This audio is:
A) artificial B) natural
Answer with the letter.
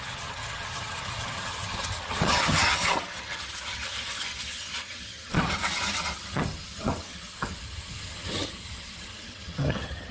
A